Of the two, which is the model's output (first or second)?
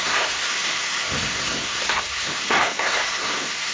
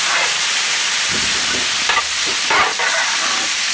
first